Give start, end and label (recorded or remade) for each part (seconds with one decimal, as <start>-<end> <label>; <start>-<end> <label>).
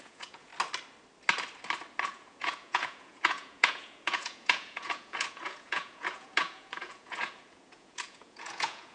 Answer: 0.0-0.5 remade; 0.5-2.0 recorded; 2.0-8.9 remade